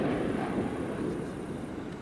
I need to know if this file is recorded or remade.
recorded